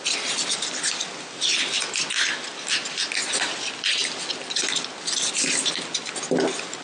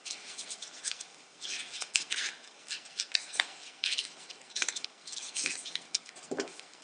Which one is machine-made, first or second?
second